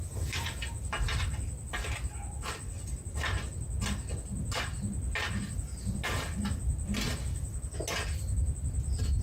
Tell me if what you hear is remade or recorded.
recorded